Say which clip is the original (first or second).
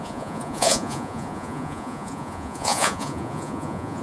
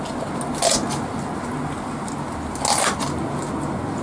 second